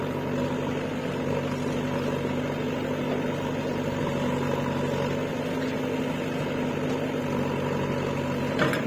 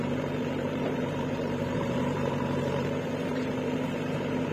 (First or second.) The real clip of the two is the first